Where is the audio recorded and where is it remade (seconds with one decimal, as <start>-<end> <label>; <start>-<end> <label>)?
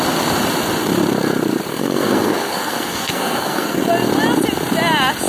0.0-1.7 recorded; 1.7-3.9 remade; 3.9-5.3 recorded